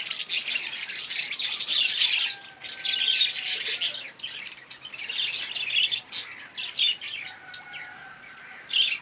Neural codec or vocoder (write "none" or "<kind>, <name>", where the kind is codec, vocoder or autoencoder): none